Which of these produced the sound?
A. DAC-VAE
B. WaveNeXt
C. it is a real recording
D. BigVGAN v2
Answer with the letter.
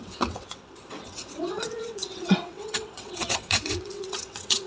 B